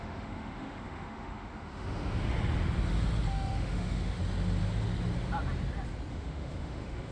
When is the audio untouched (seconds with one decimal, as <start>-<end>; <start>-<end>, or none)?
2.3-3.3; 4.2-6.1